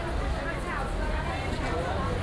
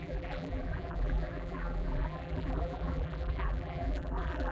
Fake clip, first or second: second